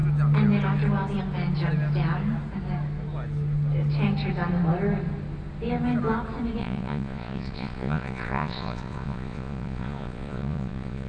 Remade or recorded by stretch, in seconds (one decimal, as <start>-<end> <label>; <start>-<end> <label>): 0.0-6.6 recorded; 6.6-11.1 remade